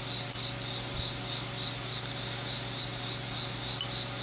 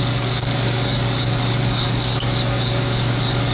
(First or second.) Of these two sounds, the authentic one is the first